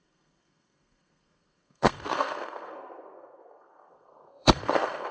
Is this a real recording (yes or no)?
no